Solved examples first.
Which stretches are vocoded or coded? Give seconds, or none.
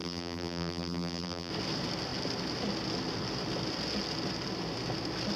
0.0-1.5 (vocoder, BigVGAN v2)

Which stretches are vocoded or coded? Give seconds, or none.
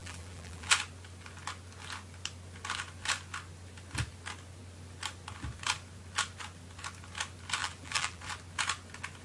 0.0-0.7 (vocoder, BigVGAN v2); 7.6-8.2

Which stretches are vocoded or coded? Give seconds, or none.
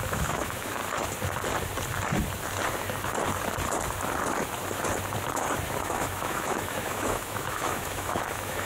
0.0-0.8 (autoencoder, DAC-VAE); 5.8-8.6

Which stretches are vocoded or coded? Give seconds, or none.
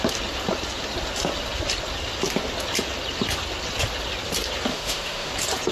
4.7-5.3 (autoencoder, DAC-VAE)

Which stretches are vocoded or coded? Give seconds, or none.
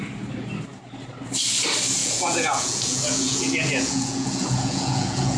2.0-5.4 (vocoder, Vocos)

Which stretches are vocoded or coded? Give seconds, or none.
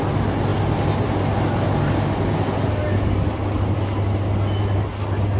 none